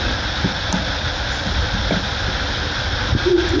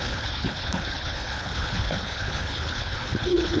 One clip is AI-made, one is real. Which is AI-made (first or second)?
second